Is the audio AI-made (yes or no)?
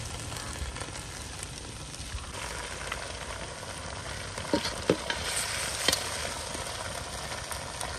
no